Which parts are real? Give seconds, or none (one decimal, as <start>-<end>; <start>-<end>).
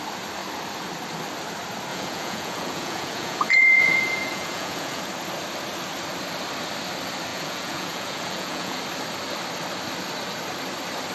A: 0.0-1.9; 5.0-7.3; 8.8-11.1